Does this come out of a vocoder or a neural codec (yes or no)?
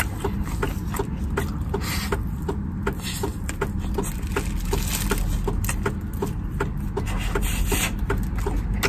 no